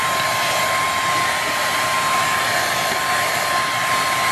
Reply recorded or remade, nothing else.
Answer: recorded